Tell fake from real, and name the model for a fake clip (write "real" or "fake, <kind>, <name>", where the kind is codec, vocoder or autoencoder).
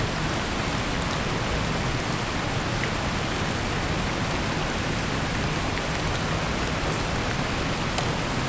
real